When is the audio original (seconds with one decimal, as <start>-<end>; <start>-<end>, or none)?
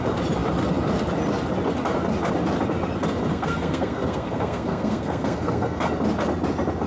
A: 0.0-3.3; 5.8-6.9